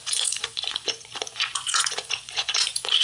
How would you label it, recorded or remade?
remade